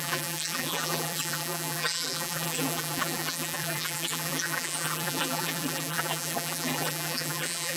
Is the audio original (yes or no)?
no